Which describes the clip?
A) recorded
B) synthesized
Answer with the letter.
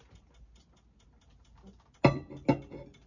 A